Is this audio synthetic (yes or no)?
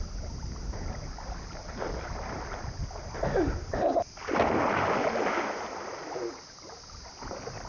no